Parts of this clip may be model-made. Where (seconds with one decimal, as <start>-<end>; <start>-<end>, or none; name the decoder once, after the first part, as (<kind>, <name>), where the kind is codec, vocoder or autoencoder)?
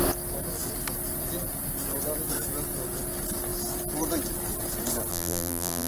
5.1-5.9 (vocoder, BigVGAN v2)